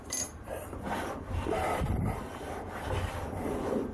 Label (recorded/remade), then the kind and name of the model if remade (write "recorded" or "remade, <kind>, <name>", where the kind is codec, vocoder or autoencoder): remade, vocoder, BigVGAN v2